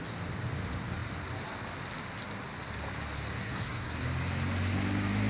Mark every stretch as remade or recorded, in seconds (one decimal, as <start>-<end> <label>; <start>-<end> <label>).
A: 0.0-3.4 recorded; 3.4-4.0 remade; 4.0-5.3 recorded